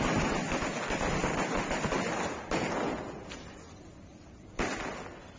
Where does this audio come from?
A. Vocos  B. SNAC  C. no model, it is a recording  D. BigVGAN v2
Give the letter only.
C